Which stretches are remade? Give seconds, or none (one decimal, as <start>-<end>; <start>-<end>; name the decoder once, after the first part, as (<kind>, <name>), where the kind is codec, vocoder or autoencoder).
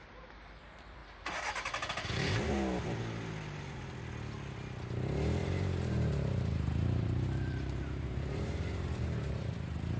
5.4-9.5 (vocoder, BigVGAN v2)